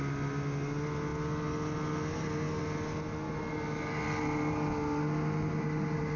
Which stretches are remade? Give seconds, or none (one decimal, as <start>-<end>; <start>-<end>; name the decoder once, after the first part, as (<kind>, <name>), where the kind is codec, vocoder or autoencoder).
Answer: none